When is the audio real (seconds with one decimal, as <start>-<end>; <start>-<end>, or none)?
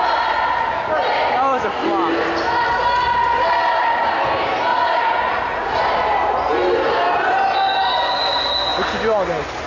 0.0-4.7; 5.8-9.7